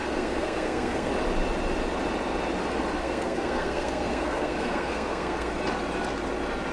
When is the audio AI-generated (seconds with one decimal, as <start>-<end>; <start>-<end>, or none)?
0.0-1.1; 3.0-5.5